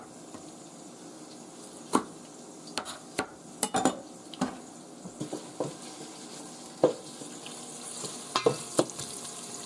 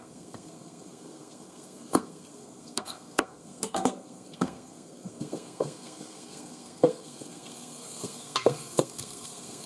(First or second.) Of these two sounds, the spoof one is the second